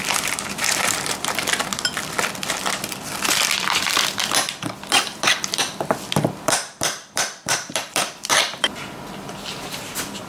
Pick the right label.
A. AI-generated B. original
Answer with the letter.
A